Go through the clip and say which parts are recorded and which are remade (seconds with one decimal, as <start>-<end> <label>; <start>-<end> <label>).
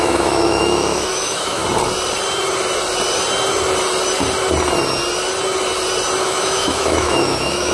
0.0-1.6 remade; 1.6-6.2 recorded; 6.2-7.7 remade